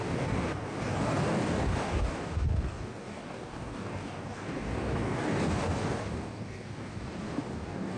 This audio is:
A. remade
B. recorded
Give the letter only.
A